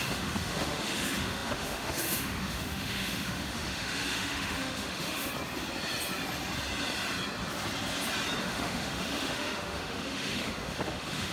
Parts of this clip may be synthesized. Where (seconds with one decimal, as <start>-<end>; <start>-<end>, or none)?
0.0-5.3; 8.4-11.3